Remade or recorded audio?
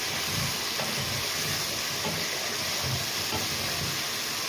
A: recorded